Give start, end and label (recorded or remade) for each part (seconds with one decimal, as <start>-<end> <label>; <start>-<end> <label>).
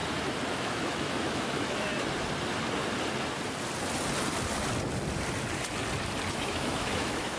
0.0-0.5 recorded; 0.5-1.9 remade; 1.9-6.3 recorded; 6.3-7.4 remade